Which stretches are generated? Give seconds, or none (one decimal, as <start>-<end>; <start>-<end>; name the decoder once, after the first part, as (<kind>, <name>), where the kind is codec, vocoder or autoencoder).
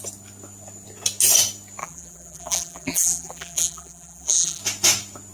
1.8-4.6 (vocoder, BigVGAN v2)